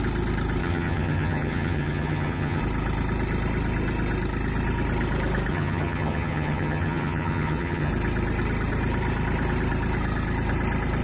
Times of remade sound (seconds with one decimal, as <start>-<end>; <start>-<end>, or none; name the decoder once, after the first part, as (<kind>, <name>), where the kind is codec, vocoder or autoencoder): 0.6-2.6 (vocoder, HiFi-GAN); 5.5-7.9